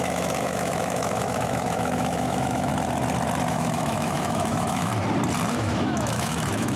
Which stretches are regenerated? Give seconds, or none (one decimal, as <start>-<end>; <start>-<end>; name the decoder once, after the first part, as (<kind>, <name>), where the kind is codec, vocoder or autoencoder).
0.0-2.7 (autoencoder, DAC-VAE); 3.5-4.9; 5.5-6.8